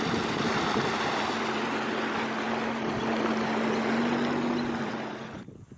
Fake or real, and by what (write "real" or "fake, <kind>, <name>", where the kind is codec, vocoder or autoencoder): real